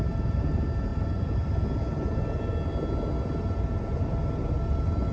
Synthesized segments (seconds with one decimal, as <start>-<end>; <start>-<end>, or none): none